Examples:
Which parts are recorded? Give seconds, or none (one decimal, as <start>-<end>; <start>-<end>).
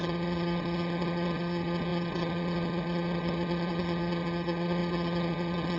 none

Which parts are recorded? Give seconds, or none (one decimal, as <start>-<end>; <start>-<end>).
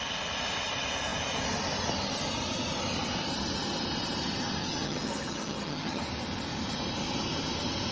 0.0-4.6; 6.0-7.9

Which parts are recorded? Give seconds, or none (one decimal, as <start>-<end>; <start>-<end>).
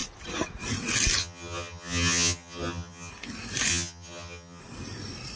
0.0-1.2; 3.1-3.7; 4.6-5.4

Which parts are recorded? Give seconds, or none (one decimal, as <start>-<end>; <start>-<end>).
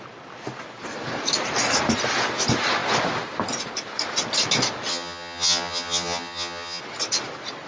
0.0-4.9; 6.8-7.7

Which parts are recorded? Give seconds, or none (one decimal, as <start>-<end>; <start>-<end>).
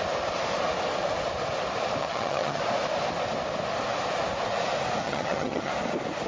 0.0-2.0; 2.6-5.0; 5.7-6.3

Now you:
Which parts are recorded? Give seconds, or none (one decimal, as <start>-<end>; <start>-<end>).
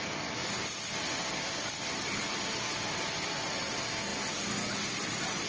0.0-5.5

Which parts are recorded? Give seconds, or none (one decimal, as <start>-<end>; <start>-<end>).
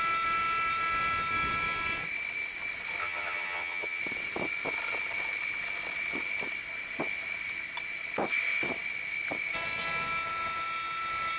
0.0-3.0; 4.0-11.4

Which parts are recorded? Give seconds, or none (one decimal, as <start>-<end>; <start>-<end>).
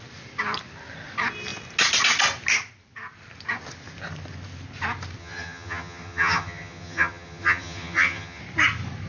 0.0-5.2; 8.4-9.1